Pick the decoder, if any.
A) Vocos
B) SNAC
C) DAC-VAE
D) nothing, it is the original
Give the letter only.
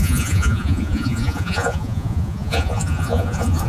A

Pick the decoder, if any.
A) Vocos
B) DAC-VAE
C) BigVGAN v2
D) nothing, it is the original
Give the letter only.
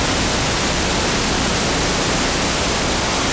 D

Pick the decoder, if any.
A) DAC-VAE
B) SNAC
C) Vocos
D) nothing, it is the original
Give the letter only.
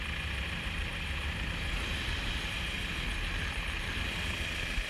D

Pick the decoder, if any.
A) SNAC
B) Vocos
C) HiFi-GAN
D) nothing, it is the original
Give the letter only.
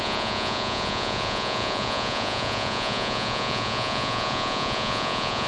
B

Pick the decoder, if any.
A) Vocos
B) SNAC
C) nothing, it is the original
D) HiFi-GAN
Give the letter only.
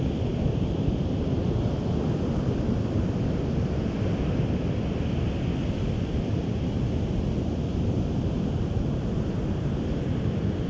C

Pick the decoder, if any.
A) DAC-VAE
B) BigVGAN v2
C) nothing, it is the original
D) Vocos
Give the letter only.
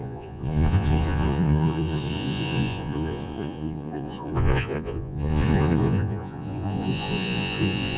D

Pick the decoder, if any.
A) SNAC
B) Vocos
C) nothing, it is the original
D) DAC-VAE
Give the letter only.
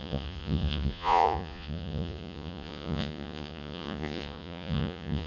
B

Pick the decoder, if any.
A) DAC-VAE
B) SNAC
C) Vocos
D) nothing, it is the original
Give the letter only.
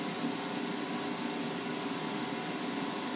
D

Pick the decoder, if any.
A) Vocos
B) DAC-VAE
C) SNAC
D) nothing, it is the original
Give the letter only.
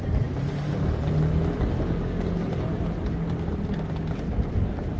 D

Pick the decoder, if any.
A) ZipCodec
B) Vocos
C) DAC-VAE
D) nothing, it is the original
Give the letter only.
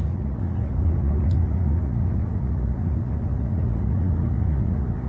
B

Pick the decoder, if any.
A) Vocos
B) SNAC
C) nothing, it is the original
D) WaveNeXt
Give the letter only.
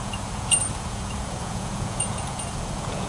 A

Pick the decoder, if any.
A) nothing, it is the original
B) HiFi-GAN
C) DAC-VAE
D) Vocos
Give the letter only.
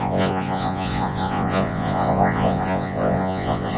D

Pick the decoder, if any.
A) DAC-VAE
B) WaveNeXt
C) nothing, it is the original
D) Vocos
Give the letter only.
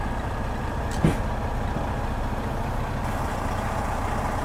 C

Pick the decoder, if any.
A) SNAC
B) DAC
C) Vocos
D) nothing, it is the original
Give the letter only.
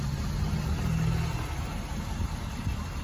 D